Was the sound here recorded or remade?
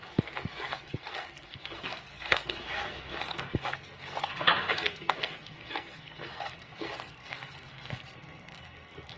remade